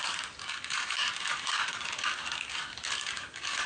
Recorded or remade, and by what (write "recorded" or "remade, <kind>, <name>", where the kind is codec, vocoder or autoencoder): remade, codec, DAC